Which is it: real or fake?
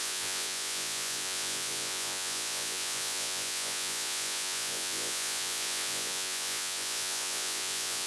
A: fake